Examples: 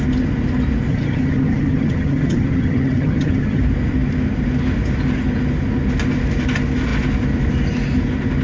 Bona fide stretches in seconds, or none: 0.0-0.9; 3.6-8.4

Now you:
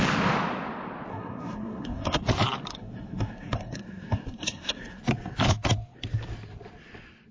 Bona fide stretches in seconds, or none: 0.0-1.1; 2.2-2.7; 5.0-7.3

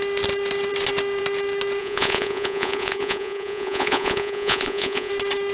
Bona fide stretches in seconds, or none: 0.0-1.8; 5.1-5.5

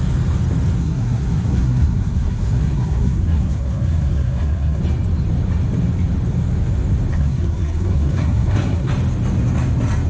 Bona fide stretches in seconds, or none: 0.0-0.8; 4.8-7.1; 8.9-10.1

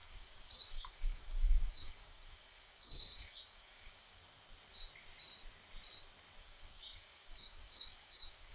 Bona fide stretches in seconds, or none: 4.2-6.4